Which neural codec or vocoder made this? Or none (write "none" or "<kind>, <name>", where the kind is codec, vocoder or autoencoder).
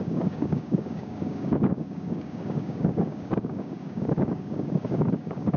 codec, DAC